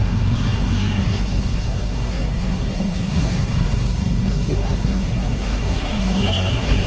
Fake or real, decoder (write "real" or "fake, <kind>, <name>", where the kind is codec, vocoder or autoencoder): fake, codec, SNAC